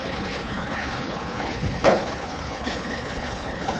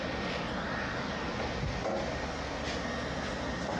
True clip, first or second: second